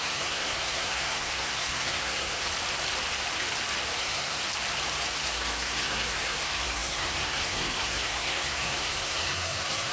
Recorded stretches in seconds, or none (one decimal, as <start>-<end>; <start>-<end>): 2.4-4.0; 4.4-5.2